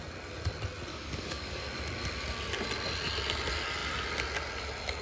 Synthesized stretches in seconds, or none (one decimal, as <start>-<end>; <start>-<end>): 0.9-1.6